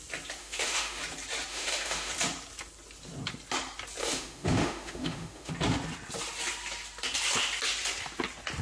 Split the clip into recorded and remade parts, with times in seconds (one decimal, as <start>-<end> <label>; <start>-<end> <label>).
0.0-0.4 recorded; 0.4-1.0 remade; 1.0-1.5 recorded; 1.5-2.1 remade; 2.1-4.0 recorded; 4.0-5.5 remade; 5.5-8.6 recorded